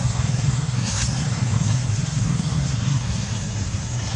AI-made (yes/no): yes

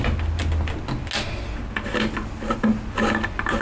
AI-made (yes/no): no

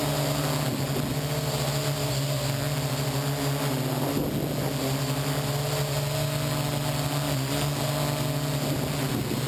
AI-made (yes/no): no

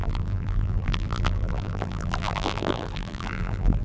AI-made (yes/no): yes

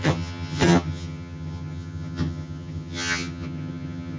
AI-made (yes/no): yes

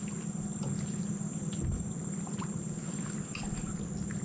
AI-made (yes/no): no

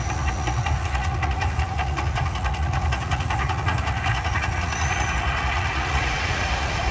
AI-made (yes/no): yes